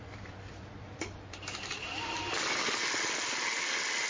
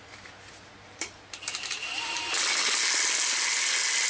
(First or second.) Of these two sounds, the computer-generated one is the first